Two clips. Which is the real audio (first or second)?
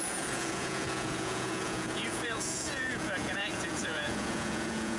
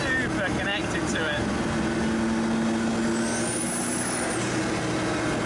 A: second